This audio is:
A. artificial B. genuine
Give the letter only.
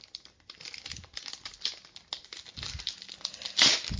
B